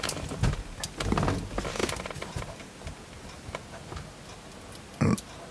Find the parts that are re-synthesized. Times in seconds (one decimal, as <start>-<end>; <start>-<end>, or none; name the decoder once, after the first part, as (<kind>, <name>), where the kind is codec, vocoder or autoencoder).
none